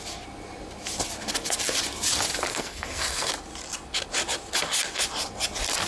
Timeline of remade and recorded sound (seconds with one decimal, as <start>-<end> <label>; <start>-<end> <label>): 0.0-2.5 recorded; 2.5-3.3 remade; 3.3-5.9 recorded